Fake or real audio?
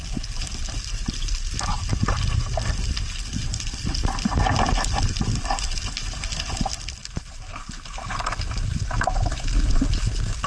real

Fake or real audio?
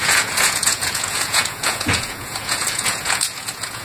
fake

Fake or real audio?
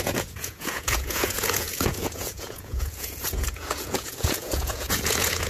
fake